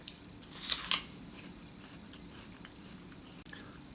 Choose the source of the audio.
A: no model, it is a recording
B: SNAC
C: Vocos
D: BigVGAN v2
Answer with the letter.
A